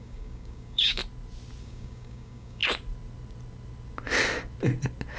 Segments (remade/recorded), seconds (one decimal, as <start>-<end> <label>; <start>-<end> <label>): 0.0-1.0 remade; 1.0-1.6 recorded; 1.6-2.6 remade; 2.6-5.2 recorded